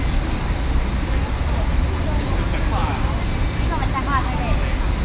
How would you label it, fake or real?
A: real